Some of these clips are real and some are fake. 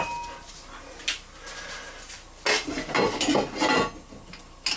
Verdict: real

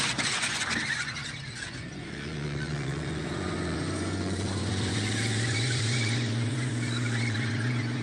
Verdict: fake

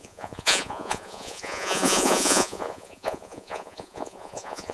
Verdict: fake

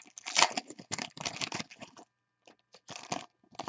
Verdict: real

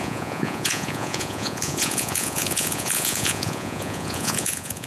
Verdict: fake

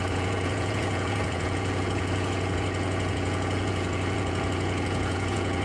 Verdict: fake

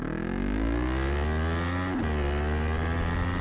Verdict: real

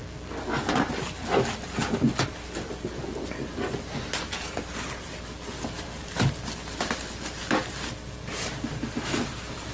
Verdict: real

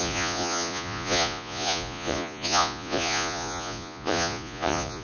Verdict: fake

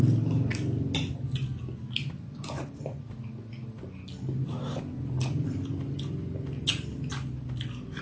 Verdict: real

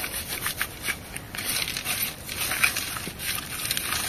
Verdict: real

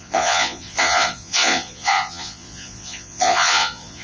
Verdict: fake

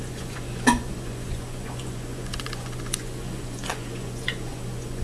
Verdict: fake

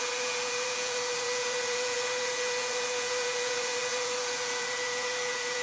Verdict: fake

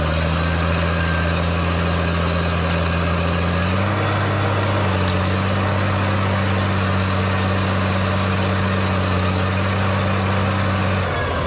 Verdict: real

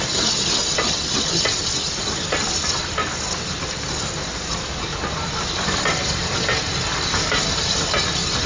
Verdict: real